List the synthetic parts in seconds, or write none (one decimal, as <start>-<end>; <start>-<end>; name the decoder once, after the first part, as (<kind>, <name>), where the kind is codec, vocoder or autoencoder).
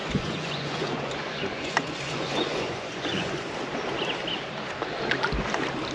0.0-3.5 (vocoder, Vocos)